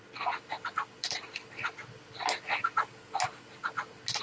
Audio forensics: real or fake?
real